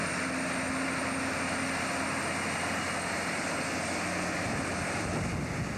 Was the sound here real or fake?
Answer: real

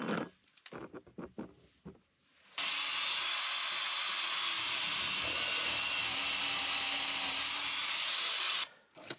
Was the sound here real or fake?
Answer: real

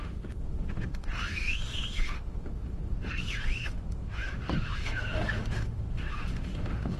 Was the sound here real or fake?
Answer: fake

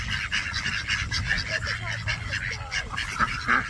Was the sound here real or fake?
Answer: real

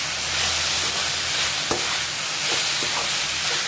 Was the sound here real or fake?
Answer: real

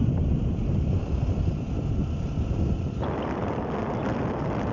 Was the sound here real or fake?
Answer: real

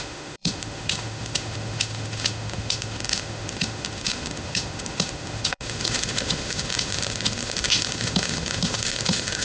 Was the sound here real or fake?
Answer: fake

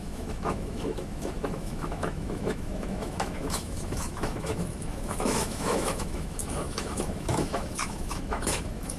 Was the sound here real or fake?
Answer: fake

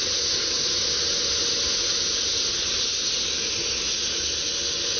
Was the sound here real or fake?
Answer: real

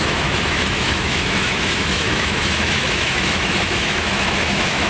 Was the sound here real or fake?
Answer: fake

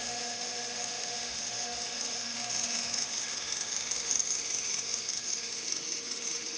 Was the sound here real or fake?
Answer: fake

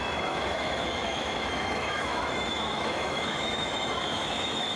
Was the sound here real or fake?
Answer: fake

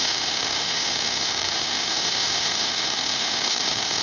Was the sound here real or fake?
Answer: fake